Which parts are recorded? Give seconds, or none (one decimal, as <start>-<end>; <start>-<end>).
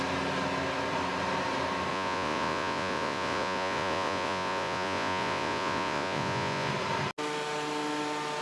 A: 0.0-1.9; 6.7-8.4